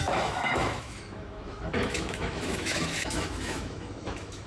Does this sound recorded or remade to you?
remade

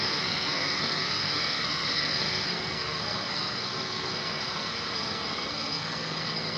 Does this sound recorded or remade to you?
remade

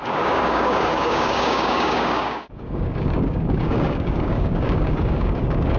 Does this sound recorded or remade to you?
remade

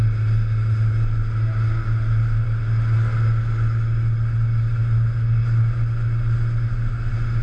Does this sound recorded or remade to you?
recorded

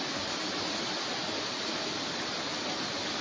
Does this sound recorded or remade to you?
recorded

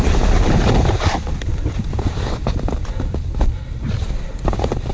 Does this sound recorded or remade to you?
recorded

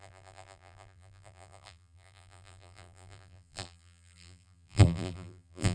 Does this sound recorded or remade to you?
remade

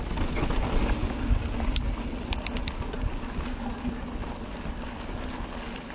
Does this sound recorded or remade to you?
recorded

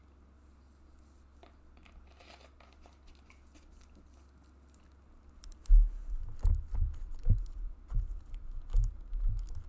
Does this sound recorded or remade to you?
recorded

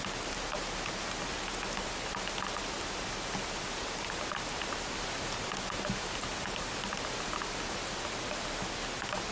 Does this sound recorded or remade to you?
recorded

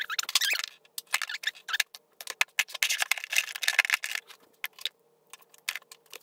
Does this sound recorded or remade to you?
recorded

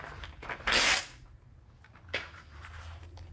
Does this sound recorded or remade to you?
remade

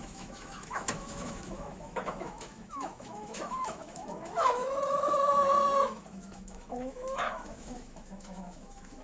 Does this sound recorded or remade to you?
remade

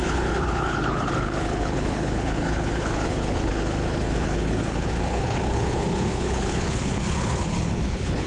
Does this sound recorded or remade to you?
remade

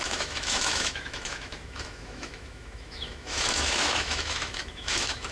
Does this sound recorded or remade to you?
remade